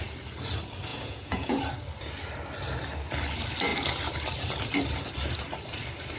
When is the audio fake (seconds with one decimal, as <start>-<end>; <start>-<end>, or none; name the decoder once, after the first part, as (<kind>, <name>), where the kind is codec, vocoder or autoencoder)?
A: 0.9-1.6 (vocoder, Vocos)